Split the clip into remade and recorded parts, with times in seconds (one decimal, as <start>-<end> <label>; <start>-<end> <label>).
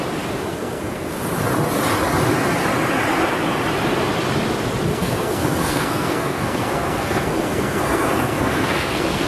0.0-0.5 recorded; 0.5-1.2 remade; 1.2-4.9 recorded; 4.9-9.3 remade